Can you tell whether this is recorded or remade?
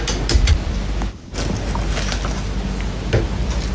recorded